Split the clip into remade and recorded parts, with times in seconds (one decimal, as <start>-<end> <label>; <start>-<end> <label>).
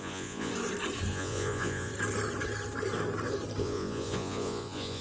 0.0-0.5 remade; 0.5-1.1 recorded; 1.1-1.9 remade; 1.9-3.6 recorded; 3.6-5.0 remade